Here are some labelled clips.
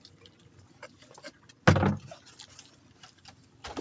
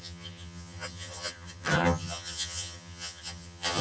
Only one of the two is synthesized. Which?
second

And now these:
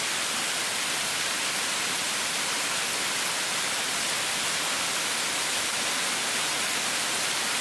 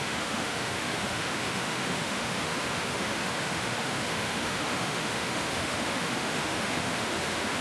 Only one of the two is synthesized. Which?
second